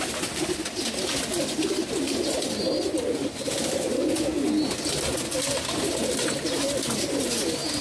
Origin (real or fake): real